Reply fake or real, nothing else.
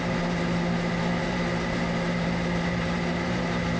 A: fake